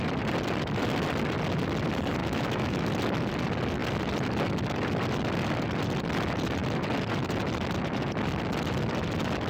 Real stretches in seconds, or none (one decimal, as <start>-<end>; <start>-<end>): 0.0-2.2; 2.9-9.5